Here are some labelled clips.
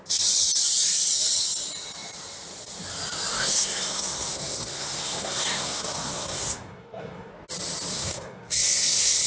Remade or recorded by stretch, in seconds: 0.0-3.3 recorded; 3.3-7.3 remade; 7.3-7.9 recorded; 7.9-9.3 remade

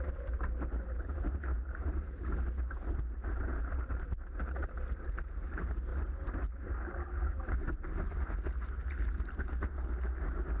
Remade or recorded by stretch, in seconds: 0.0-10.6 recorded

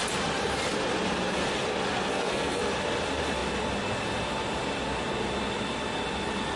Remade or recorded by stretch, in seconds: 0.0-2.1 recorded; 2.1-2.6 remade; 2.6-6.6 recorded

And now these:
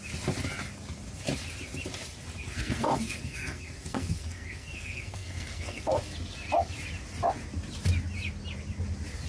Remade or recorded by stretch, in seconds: 0.0-2.4 recorded; 2.4-6.0 remade; 6.0-9.3 recorded